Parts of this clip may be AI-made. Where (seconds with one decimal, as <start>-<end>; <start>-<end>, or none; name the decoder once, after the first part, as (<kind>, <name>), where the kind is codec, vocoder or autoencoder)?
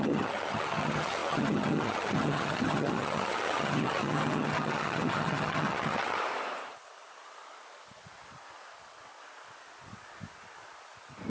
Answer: 0.0-6.2 (vocoder, HiFi-GAN)